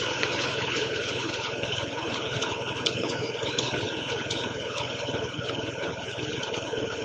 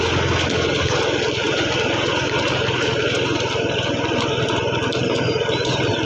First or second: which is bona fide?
second